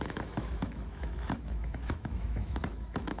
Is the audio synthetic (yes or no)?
yes